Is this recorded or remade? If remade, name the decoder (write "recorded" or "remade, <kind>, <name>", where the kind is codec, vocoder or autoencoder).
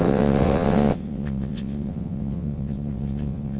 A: remade, vocoder, WaveNeXt